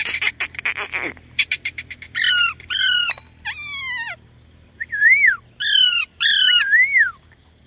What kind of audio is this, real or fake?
fake